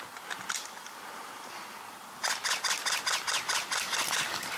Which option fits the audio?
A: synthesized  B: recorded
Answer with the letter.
B